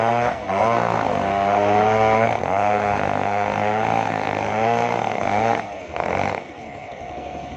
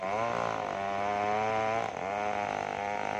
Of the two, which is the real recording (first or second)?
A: second